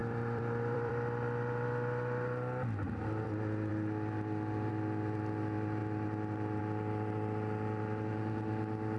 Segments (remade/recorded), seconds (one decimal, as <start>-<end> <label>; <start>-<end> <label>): 0.0-0.9 remade; 0.9-5.8 recorded; 5.8-6.6 remade; 6.6-9.0 recorded